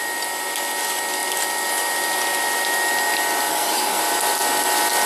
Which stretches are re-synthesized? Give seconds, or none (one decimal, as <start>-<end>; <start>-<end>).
3.5-4.0